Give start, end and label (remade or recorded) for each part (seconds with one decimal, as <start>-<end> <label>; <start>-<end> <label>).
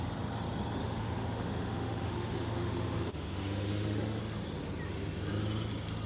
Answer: 0.0-0.8 recorded; 0.8-4.2 remade; 4.2-6.1 recorded